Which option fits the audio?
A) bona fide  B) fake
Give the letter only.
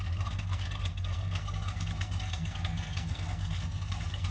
B